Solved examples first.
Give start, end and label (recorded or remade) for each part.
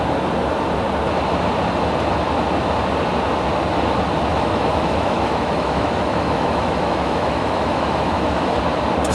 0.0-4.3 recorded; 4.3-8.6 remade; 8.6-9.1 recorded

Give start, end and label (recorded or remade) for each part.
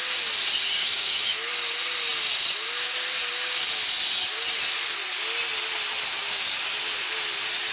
0.0-0.8 recorded; 0.8-1.5 remade; 1.5-7.7 recorded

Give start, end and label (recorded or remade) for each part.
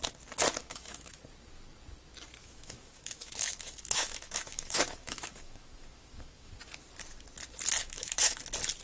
0.0-0.6 recorded; 0.6-1.2 remade; 1.2-2.4 recorded; 2.4-6.5 remade; 6.5-7.8 recorded; 7.8-8.4 remade; 8.4-8.8 recorded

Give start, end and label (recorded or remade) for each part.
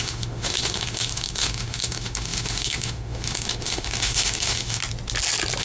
0.0-4.8 remade; 4.8-5.6 recorded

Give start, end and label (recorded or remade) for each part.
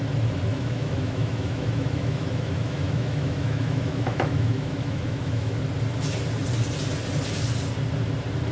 0.0-0.5 recorded; 0.5-5.6 remade; 5.6-8.5 recorded